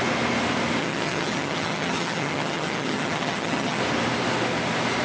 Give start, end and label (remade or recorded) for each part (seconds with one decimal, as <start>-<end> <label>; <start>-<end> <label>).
0.0-0.8 recorded; 0.8-3.8 remade; 3.8-5.0 recorded